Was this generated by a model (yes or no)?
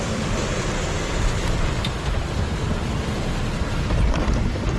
yes